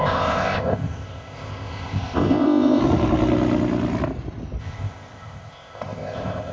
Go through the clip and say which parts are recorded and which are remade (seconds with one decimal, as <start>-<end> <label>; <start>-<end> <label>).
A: 0.0-2.8 remade; 2.8-4.6 recorded; 4.6-6.5 remade